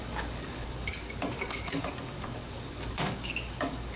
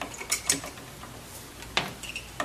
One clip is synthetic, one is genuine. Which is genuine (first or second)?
second